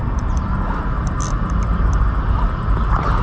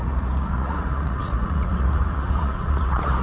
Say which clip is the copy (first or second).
second